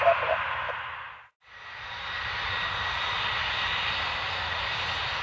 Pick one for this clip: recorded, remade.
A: recorded